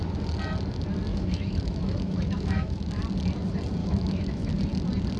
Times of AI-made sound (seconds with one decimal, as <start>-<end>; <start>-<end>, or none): 1.1-3.0; 3.8-4.5